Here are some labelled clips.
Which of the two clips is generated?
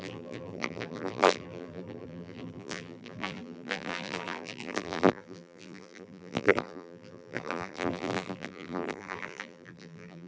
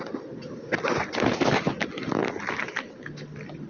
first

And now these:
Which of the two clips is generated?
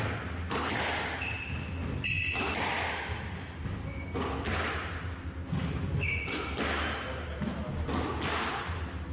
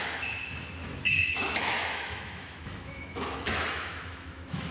second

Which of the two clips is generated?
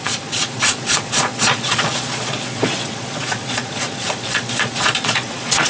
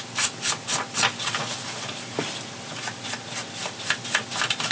first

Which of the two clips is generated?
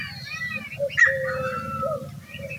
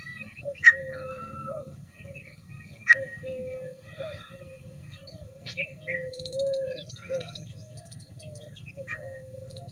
second